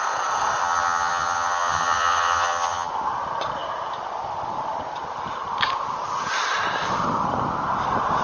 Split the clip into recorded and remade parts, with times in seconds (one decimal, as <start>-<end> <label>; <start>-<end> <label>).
0.0-0.6 recorded; 0.6-2.9 remade; 2.9-8.2 recorded